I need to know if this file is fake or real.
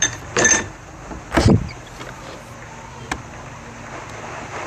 real